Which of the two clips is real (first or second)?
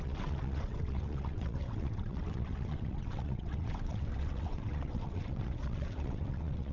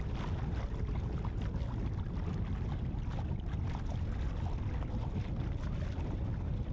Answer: second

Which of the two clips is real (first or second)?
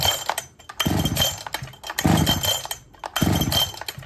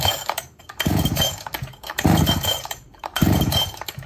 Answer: first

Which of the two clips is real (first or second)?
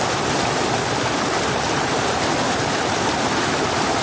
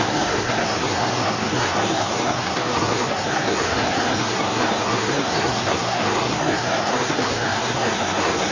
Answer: first